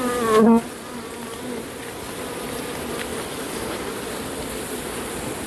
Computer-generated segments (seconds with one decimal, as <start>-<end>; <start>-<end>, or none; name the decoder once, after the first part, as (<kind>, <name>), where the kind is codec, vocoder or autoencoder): 3.1-4.5 (vocoder, BigVGAN v2)